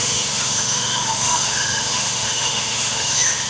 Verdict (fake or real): fake